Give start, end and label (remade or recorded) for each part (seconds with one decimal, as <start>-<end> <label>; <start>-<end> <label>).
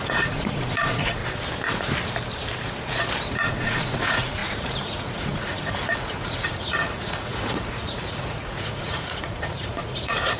0.0-1.2 remade; 1.2-3.3 recorded; 3.3-10.4 remade